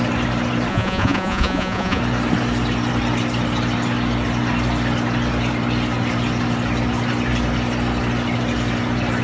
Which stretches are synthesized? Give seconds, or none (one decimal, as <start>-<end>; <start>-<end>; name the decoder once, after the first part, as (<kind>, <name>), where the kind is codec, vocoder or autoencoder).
0.7-2.0 (vocoder, Vocos)

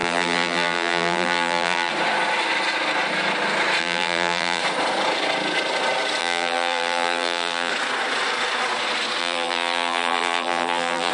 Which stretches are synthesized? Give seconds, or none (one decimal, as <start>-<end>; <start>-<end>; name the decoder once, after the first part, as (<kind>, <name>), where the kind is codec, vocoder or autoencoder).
0.0-1.9 (vocoder, BigVGAN v2); 3.8-4.6; 6.2-7.7; 9.2-11.1